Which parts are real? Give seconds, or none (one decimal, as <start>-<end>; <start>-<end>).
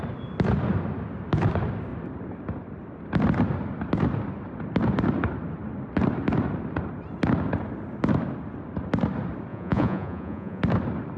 0.0-9.5; 10.6-11.2